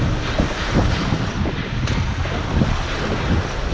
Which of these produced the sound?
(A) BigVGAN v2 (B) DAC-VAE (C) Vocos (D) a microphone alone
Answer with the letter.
D